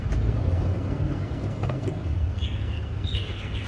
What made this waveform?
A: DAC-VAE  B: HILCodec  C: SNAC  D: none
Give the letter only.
C